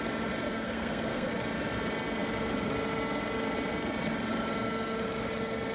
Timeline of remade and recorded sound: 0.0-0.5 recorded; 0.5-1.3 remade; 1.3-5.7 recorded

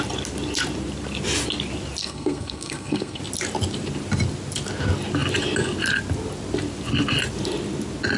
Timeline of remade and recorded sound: 0.0-2.0 recorded; 2.0-3.2 remade; 3.2-8.2 recorded

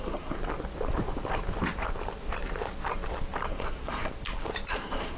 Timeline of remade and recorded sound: 0.0-0.4 remade; 0.4-3.5 recorded; 3.5-4.1 remade; 4.1-4.7 recorded; 4.7-5.2 remade

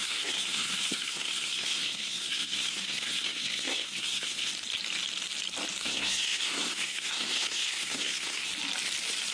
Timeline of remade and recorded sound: 0.0-4.5 remade; 4.5-5.8 recorded; 5.8-8.5 remade; 8.5-9.3 recorded